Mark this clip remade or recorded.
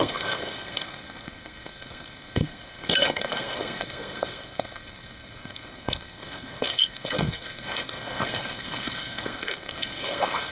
remade